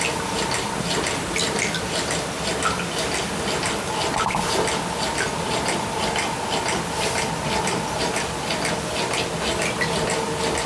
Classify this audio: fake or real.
real